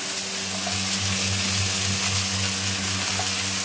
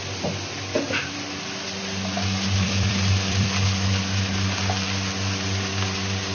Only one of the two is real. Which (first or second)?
first